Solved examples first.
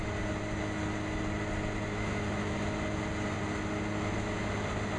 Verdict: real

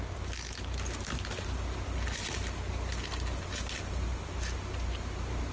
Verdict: real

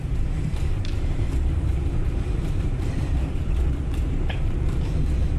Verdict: fake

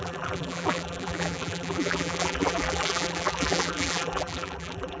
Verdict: fake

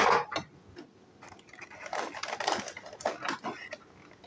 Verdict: real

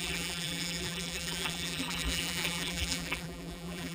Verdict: fake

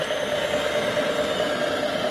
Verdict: real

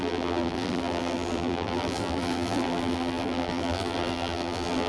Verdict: fake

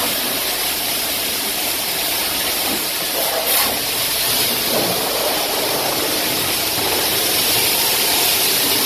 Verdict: fake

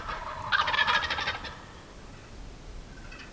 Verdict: real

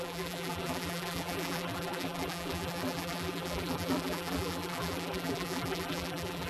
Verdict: fake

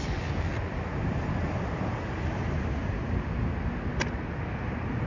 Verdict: real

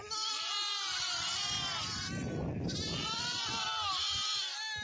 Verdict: real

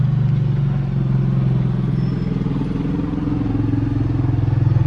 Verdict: real